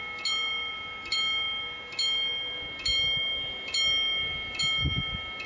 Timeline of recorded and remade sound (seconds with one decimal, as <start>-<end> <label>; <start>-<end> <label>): 0.0-5.5 recorded